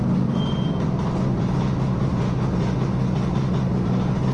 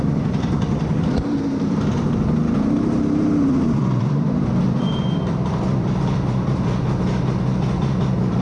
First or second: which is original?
first